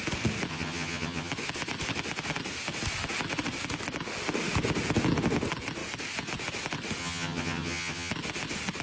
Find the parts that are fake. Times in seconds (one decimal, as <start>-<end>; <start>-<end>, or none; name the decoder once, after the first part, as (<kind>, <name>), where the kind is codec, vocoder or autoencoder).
0.5-1.3 (vocoder, HiFi-GAN); 7.0-8.1